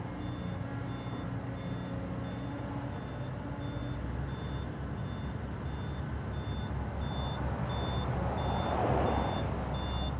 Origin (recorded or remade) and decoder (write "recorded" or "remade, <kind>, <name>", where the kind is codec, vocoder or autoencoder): recorded